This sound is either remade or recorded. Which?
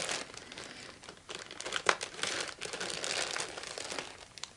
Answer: recorded